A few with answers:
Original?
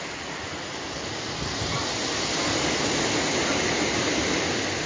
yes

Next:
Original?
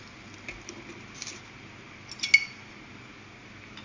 yes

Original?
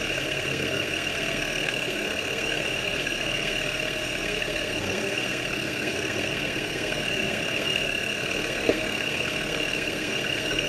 no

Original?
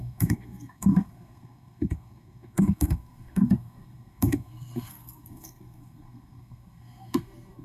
no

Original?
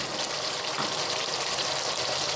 yes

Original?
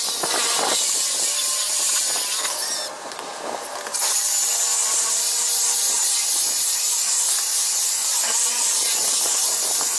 yes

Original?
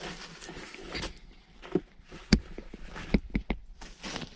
yes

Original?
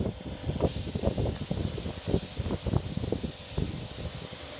yes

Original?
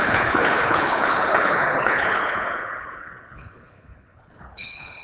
no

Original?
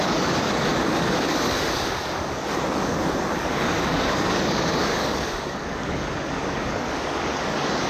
no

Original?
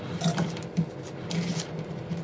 no